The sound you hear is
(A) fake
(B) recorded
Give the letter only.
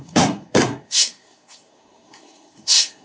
A